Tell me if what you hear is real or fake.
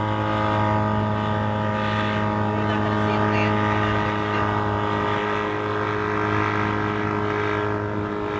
real